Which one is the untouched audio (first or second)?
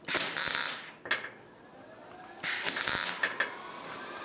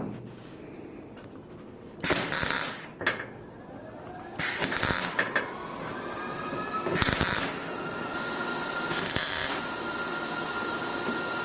first